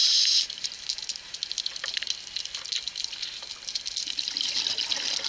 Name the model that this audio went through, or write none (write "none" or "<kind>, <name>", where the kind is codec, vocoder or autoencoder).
none